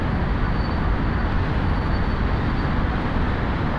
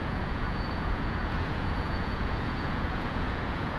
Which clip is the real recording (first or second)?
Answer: first